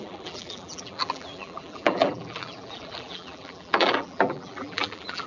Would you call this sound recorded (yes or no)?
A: no